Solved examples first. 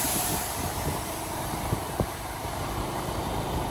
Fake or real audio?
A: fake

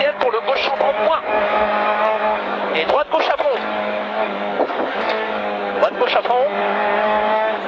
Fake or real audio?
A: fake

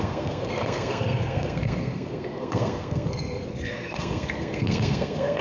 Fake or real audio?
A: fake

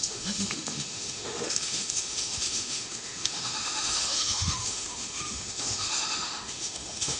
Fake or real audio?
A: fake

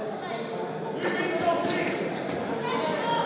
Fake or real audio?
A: real